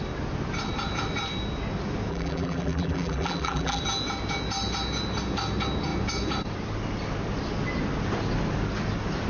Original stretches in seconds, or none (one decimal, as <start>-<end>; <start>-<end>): 0.0-2.1; 3.8-9.3